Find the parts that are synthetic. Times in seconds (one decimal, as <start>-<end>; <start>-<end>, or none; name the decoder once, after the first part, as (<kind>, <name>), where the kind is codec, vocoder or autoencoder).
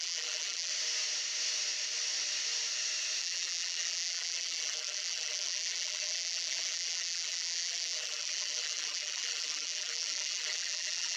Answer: 0.0-0.7 (vocoder, BigVGAN v2); 3.2-11.2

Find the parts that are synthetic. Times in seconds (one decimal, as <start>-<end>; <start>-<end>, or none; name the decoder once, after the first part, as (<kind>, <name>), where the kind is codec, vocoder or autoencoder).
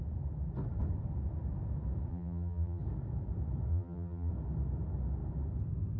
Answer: 2.1-2.8 (vocoder, BigVGAN v2); 3.7-4.3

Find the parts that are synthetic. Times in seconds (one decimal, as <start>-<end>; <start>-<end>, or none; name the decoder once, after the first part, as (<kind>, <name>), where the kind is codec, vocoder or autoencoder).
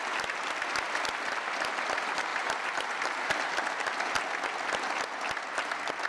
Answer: 2.3-3.3 (vocoder, BigVGAN v2)